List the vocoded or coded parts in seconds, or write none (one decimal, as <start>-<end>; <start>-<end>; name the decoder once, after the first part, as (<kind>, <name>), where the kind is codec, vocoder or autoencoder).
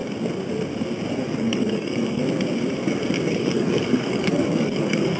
1.1-2.2 (codec, DAC); 3.3-5.2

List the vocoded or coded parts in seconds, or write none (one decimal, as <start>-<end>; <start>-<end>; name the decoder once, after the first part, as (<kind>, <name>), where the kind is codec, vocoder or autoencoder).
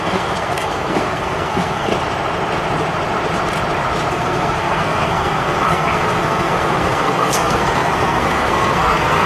0.0-1.9 (codec, SNAC); 4.1-9.3